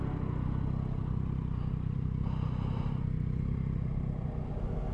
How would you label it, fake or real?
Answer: real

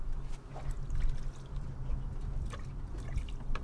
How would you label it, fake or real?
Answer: real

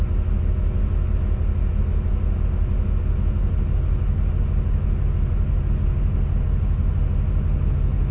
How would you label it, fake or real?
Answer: real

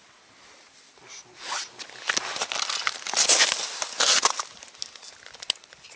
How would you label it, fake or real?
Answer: real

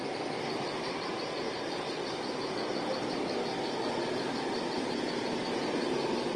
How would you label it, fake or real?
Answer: real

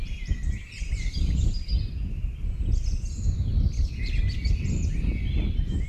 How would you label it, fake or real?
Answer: real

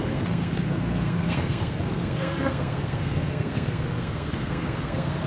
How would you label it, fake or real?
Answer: fake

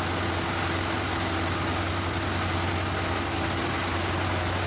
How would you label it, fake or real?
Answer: real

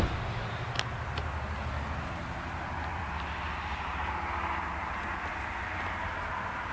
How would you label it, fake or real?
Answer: real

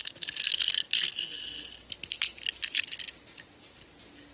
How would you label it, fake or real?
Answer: real